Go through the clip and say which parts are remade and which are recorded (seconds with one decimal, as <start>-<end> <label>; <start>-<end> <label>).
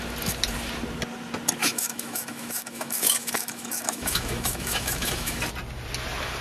0.0-1.6 recorded; 1.6-5.4 remade; 5.4-6.4 recorded